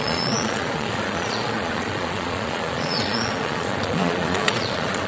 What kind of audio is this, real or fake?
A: fake